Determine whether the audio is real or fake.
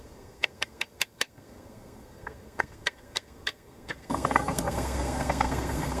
fake